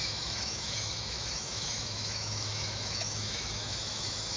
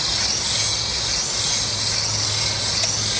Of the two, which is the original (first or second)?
second